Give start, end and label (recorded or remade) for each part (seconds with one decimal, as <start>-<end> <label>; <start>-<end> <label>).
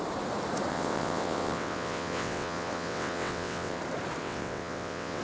0.0-0.7 recorded; 0.7-3.8 remade; 3.8-4.2 recorded; 4.2-5.2 remade